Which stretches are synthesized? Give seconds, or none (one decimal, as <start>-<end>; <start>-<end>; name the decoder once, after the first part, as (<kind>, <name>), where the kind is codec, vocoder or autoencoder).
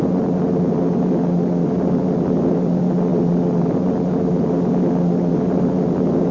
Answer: none